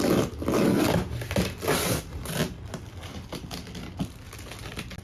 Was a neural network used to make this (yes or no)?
no